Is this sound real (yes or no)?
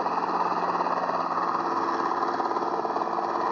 yes